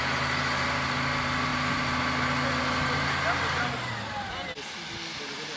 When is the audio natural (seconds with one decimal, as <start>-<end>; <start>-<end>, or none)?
0.0-5.6